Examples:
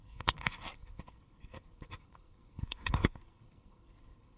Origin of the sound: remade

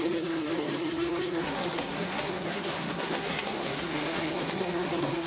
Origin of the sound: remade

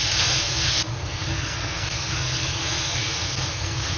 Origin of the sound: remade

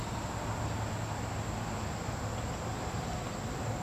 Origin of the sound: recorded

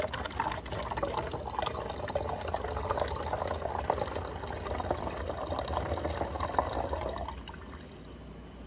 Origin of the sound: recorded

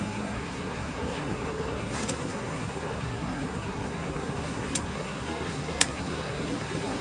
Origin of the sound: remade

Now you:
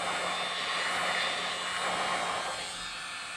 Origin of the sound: recorded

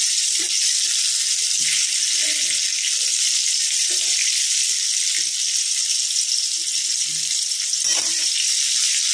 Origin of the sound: recorded